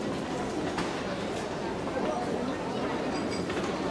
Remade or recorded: recorded